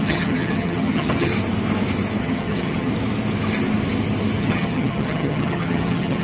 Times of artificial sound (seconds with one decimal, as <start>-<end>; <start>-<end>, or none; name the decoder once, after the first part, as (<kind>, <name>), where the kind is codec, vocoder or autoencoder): 0.0-1.3 (vocoder, HiFi-GAN); 2.2-2.9; 4.4-6.2